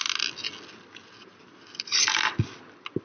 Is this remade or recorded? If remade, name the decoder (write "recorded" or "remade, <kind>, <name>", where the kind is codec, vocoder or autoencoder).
recorded